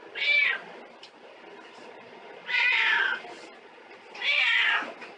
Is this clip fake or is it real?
real